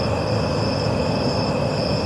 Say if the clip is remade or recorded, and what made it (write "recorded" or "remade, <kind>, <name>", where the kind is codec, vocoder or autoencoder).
recorded